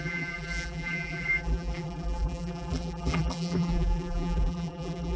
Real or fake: fake